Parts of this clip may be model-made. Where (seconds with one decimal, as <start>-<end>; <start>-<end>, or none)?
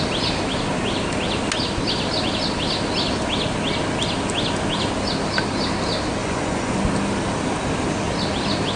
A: 6.2-6.8